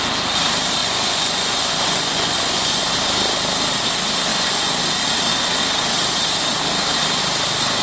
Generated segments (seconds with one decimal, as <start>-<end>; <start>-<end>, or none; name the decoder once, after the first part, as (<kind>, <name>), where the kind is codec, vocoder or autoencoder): 0.8-2.8 (vocoder, Vocos); 4.3-4.8